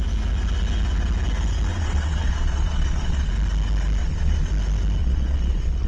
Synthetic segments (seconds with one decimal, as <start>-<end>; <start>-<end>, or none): 1.7-3.3; 4.0-4.5; 5.0-5.9